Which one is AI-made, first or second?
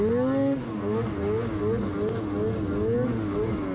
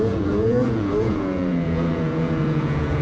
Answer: second